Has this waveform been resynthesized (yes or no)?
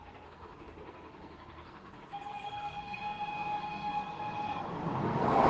yes